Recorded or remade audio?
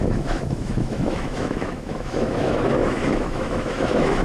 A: remade